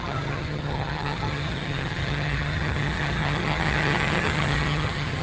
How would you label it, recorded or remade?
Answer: remade